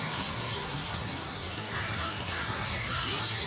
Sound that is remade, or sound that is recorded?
remade